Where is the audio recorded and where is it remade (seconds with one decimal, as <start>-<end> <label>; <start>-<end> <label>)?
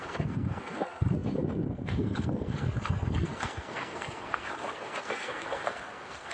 0.0-6.3 remade